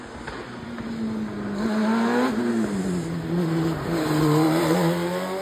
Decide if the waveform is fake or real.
real